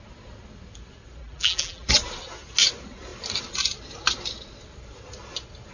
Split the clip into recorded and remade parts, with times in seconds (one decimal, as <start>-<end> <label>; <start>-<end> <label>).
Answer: 0.0-1.2 recorded; 1.2-1.9 remade; 1.9-5.7 recorded